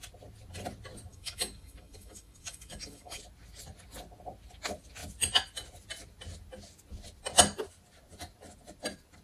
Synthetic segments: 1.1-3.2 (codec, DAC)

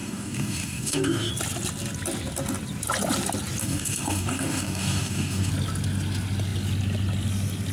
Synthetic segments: 0.0-1.3 (codec, DAC); 3.6-5.5